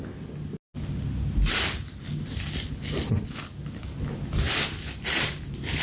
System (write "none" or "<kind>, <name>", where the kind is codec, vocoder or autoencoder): none